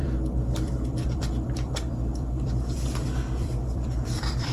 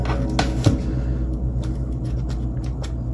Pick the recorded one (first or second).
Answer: second